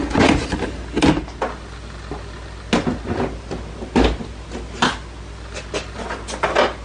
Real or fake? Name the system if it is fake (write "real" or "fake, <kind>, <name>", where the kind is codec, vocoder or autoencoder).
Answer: real